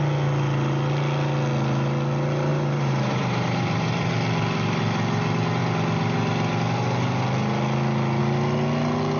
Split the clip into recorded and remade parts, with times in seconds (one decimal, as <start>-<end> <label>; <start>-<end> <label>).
0.0-2.5 recorded; 2.5-4.1 remade; 4.1-9.2 recorded